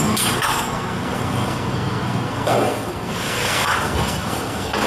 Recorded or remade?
remade